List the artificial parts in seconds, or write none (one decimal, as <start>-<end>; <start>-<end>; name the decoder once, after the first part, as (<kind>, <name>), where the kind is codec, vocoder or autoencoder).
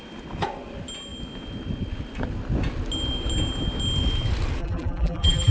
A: 4.6-5.5 (vocoder, BigVGAN v2)